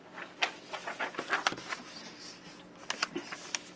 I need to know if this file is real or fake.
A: real